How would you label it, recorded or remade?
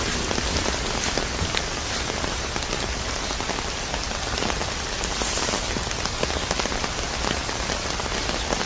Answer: recorded